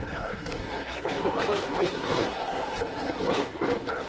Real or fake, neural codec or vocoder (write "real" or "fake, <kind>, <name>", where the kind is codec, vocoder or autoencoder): fake, codec, SNAC